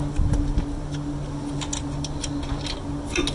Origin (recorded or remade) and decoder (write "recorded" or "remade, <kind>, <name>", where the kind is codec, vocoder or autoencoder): recorded